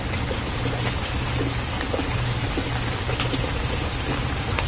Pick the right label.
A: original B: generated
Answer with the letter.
A